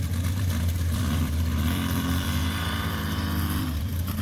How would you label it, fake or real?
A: fake